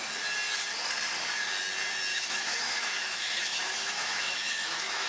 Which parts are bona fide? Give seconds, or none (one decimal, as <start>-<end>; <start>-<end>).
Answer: 0.0-2.1